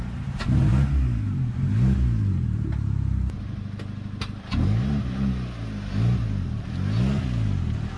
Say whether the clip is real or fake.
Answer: real